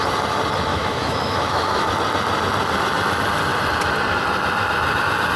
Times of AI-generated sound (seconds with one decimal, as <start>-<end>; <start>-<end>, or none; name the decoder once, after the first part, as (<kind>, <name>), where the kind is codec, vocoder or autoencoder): 0.7-1.9 (autoencoder, DAC-VAE)

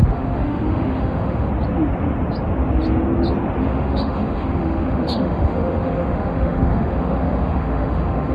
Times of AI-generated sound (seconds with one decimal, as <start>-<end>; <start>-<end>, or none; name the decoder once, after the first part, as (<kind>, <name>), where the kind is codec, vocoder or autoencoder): 0.0-1.5 (autoencoder, DAC-VAE); 3.6-8.3

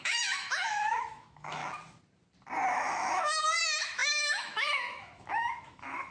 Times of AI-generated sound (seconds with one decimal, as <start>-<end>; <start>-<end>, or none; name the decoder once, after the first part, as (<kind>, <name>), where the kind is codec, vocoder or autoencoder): 0.0-1.6 (autoencoder, DAC-VAE); 2.7-6.1